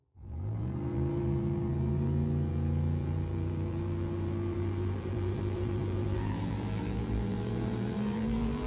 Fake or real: fake